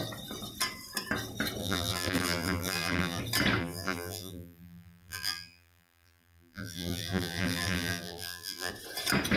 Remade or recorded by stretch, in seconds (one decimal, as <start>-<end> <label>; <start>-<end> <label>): 0.0-1.6 recorded; 1.6-3.2 remade; 3.2-3.6 recorded; 3.6-8.7 remade; 8.7-9.4 recorded